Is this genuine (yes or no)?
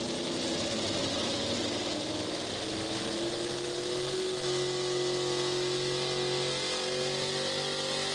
yes